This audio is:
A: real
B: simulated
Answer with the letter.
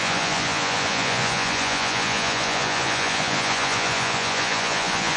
B